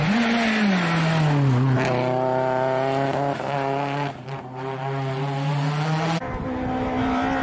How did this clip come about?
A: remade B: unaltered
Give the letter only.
B